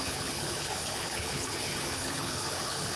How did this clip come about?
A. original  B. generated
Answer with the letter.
B